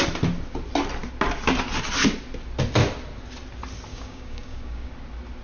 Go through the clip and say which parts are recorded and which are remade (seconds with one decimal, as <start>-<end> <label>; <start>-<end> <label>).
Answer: 0.0-3.9 recorded; 3.9-4.9 remade; 4.9-5.4 recorded

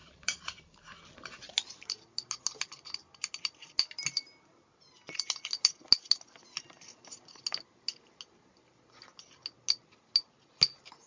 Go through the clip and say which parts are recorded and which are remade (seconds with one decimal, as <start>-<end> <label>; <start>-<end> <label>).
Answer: 0.0-0.8 remade; 0.8-11.1 recorded

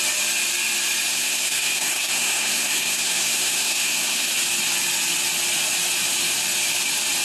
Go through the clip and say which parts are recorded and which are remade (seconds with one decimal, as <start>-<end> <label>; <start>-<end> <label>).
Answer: 0.0-1.1 recorded; 1.1-4.3 remade; 4.3-7.2 recorded